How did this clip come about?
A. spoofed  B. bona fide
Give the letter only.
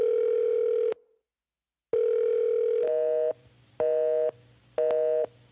B